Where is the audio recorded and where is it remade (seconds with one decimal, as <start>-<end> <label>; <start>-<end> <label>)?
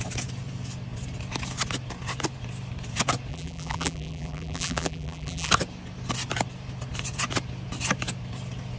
0.0-3.3 recorded; 3.3-5.5 remade; 5.5-8.8 recorded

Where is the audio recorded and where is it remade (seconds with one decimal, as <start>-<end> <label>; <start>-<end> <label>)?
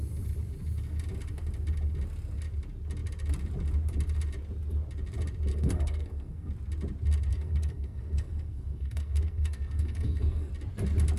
0.0-5.5 recorded; 5.5-6.5 remade; 6.5-7.3 recorded; 7.3-10.5 remade; 10.5-11.2 recorded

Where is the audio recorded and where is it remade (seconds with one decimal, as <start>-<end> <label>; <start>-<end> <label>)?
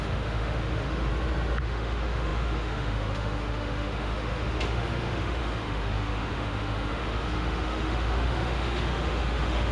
0.0-1.1 remade; 1.1-1.6 recorded; 1.6-9.7 remade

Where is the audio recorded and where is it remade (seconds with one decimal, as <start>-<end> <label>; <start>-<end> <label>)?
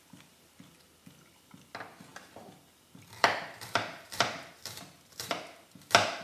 0.0-2.1 recorded; 2.1-5.8 remade; 5.8-6.2 recorded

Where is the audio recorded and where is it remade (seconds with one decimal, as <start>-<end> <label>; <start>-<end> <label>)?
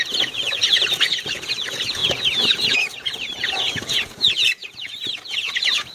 0.0-5.9 remade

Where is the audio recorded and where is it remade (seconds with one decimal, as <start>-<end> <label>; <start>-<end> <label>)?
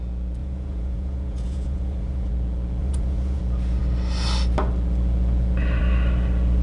0.0-0.4 recorded; 0.4-2.3 remade; 2.3-2.8 recorded; 2.8-3.4 remade; 3.4-6.6 recorded